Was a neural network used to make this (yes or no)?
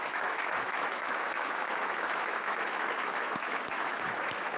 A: yes